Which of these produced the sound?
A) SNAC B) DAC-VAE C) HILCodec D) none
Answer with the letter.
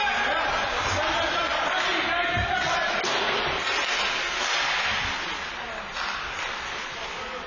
D